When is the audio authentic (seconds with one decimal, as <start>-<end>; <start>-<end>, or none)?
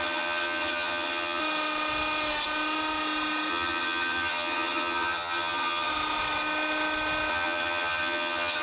1.4-3.5; 5.9-7.3